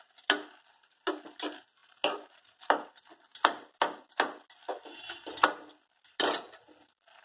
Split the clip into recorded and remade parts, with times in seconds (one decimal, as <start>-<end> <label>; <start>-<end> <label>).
0.0-7.2 recorded